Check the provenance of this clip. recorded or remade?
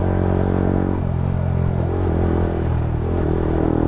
recorded